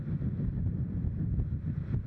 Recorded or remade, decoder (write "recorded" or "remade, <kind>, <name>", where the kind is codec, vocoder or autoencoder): recorded